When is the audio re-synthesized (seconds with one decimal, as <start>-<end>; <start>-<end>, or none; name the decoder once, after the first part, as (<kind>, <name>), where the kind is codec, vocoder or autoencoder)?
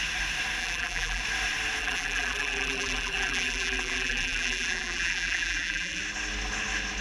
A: 0.6-1.2 (vocoder, BigVGAN v2); 1.8-6.0